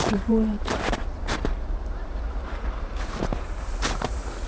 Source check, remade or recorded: remade